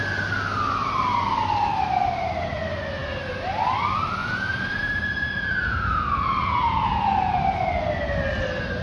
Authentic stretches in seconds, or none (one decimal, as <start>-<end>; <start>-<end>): 0.0-4.2; 7.4-8.8